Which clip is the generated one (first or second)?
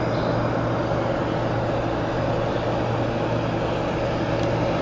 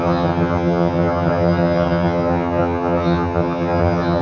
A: second